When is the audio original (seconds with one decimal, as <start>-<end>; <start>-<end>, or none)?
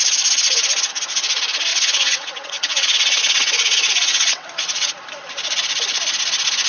0.0-1.7; 4.9-6.7